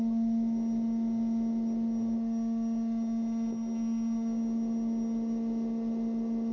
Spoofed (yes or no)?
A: no